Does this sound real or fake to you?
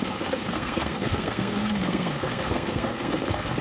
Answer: fake